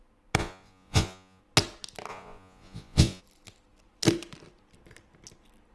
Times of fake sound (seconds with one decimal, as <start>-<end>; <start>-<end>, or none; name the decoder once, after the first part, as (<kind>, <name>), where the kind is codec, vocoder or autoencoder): 0.4-1.4 (vocoder, Vocos); 2.1-3.2

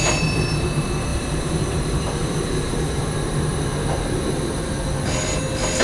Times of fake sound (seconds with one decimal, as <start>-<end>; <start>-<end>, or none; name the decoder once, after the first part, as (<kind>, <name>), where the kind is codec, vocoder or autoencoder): 1.1-3.0 (vocoder, BigVGAN v2)